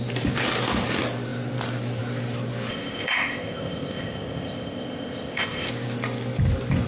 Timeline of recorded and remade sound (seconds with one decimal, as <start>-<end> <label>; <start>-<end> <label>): 0.0-2.7 recorded; 2.7-5.7 remade; 5.7-6.9 recorded